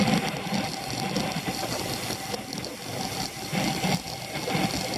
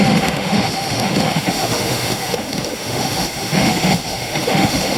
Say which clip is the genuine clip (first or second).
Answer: first